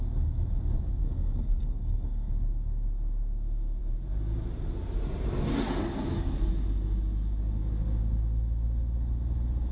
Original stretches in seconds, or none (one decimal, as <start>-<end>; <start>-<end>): 0.0-1.0; 2.3-9.7